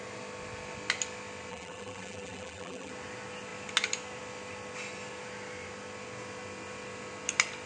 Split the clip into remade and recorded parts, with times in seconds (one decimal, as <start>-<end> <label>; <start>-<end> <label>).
0.0-1.5 recorded; 1.5-2.9 remade; 2.9-7.7 recorded